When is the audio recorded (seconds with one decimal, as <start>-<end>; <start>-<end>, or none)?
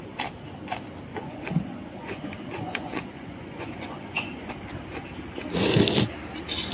0.0-1.1; 4.5-6.7